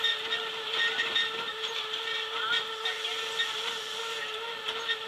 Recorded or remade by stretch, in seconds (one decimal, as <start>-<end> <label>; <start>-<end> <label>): 0.0-5.1 recorded